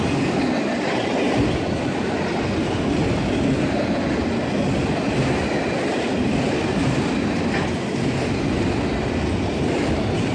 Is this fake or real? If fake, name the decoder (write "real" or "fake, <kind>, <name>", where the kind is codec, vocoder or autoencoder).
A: real